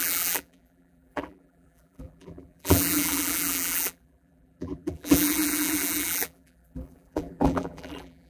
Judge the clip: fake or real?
fake